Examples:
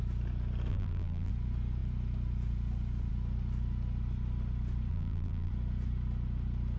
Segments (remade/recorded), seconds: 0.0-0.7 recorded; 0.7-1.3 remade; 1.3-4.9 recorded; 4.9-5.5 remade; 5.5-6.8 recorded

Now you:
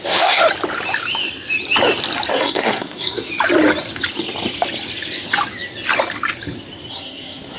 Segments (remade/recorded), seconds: 0.0-0.4 remade; 0.4-2.3 recorded; 2.3-3.3 remade; 3.3-6.9 recorded; 6.9-7.6 remade

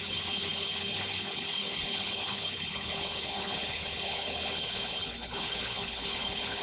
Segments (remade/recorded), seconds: 0.0-6.6 remade

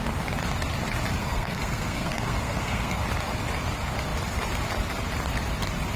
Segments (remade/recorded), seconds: 0.0-1.2 recorded; 1.2-3.0 remade; 3.0-6.0 recorded

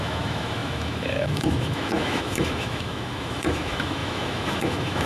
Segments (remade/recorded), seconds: 0.0-5.1 remade

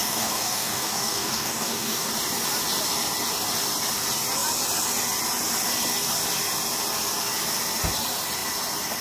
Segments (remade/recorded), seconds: 0.0-2.1 remade; 2.1-9.0 recorded

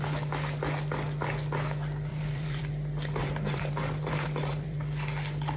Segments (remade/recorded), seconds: 0.0-2.1 recorded; 2.1-2.6 remade; 2.6-3.2 recorded; 3.2-4.8 remade; 4.8-5.6 recorded

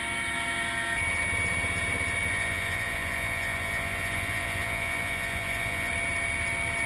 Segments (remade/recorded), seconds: 0.0-2.3 recorded; 2.3-5.9 remade; 5.9-6.9 recorded